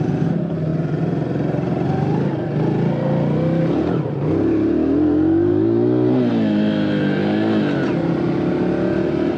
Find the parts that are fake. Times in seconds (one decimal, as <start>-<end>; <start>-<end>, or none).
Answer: none